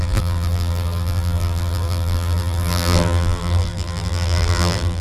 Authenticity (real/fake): fake